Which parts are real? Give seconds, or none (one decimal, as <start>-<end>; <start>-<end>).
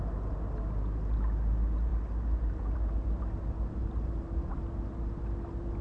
0.0-5.8